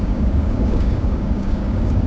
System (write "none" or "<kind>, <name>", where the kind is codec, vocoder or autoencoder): codec, DAC